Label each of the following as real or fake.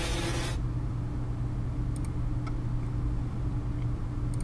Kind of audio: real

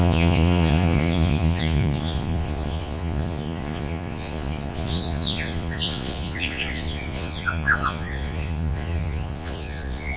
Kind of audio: fake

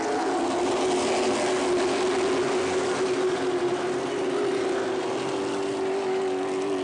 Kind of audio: real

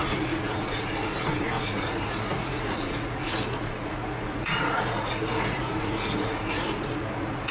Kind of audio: fake